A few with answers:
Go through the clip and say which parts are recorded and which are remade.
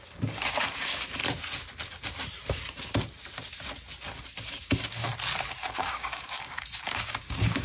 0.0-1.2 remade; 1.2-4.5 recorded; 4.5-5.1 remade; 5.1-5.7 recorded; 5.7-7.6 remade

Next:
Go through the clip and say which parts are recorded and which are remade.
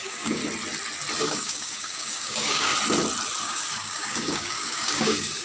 0.0-0.4 remade; 0.4-1.2 recorded; 1.2-2.7 remade; 2.7-3.4 recorded; 3.4-5.4 remade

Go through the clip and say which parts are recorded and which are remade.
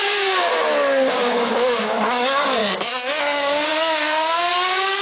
0.0-0.5 remade; 0.5-1.1 recorded; 1.1-2.6 remade; 2.6-3.2 recorded; 3.2-5.0 remade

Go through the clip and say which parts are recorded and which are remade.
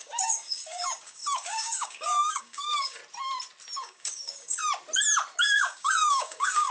0.0-3.0 remade; 3.0-3.8 recorded; 3.8-4.6 remade; 4.6-5.4 recorded; 5.4-6.7 remade